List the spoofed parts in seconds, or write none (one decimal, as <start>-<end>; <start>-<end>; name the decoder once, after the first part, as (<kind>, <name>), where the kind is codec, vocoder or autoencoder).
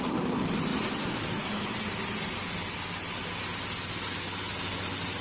none